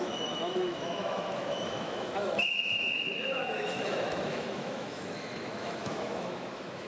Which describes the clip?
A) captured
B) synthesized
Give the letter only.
B